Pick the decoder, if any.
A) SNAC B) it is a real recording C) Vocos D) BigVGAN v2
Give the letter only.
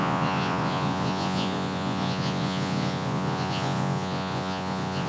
C